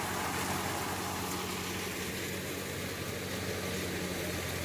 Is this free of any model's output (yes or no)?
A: yes